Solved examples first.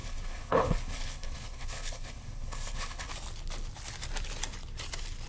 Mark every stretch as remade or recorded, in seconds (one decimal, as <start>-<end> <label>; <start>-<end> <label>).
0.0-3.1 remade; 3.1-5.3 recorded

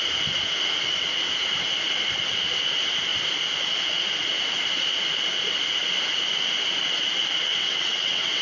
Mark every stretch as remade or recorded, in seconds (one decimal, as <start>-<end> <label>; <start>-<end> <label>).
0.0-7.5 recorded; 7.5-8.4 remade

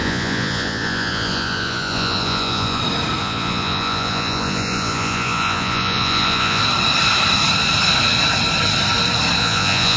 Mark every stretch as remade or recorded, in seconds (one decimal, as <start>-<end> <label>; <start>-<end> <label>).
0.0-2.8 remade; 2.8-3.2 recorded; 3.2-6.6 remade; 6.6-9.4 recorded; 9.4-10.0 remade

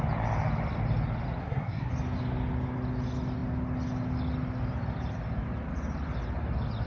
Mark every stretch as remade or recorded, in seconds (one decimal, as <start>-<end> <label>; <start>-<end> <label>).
0.0-1.4 recorded; 1.4-1.9 remade; 1.9-6.9 recorded